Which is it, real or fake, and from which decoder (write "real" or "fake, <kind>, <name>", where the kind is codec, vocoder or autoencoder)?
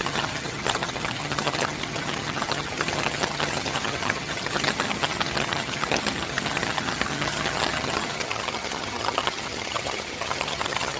fake, vocoder, HiFi-GAN